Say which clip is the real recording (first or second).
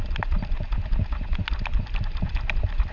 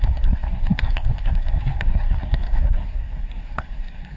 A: first